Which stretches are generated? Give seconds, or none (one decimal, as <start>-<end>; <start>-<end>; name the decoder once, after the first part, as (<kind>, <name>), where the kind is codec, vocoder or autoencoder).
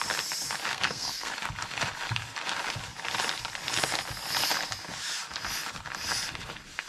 0.7-1.3 (codec, SNAC)